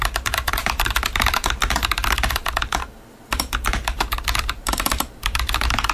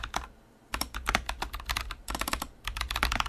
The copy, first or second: first